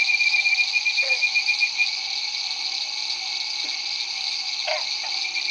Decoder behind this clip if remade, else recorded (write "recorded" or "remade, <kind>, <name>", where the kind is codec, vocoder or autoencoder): recorded